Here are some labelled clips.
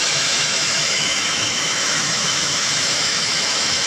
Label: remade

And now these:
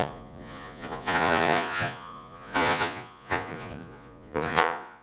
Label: remade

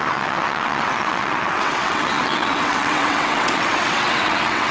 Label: remade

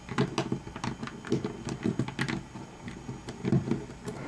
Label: recorded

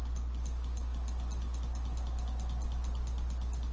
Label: recorded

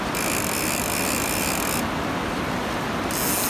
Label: recorded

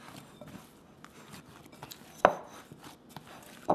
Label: recorded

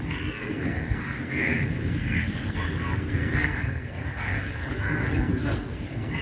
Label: remade